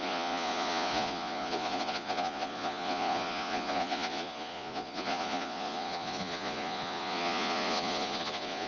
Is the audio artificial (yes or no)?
yes